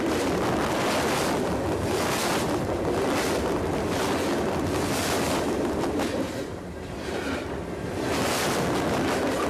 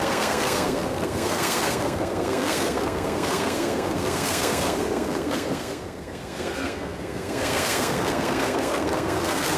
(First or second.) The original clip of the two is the first